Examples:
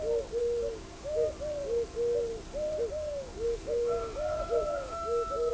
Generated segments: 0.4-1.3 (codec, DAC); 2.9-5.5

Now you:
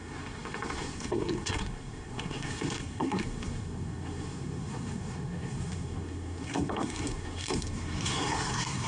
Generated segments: 0.0-8.9 (codec, SNAC)

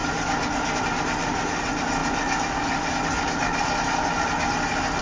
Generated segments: none

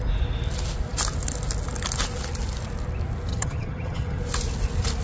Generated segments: 3.3-4.2 (vocoder, HiFi-GAN)

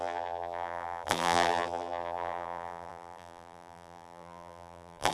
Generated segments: 0.0-5.1 (vocoder, BigVGAN v2)

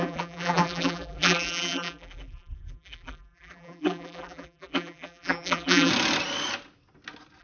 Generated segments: 0.0-5.9 (vocoder, BigVGAN v2)

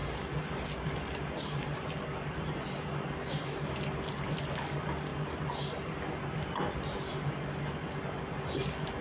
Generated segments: 0.0-3.3 (vocoder, BigVGAN v2); 5.1-7.1